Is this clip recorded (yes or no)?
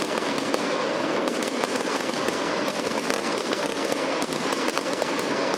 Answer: no